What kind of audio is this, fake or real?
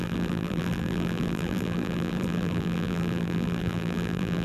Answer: fake